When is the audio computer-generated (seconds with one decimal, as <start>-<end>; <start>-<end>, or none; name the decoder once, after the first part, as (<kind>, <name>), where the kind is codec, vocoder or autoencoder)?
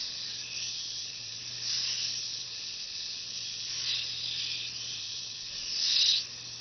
0.7-1.4 (vocoder, WaveNeXt); 2.2-3.7; 5.0-5.5